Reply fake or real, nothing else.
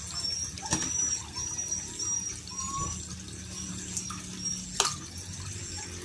real